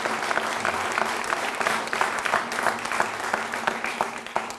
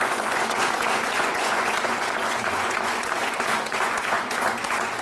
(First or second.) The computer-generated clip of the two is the second